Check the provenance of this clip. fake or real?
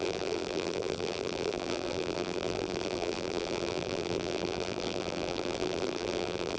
fake